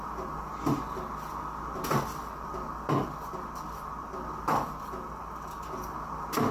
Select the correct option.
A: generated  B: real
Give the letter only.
B